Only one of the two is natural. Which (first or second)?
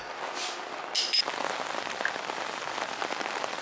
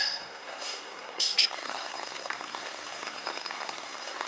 first